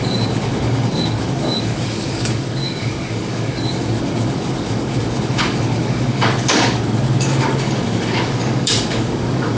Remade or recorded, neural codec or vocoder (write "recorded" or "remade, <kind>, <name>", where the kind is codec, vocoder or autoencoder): remade, codec, DAC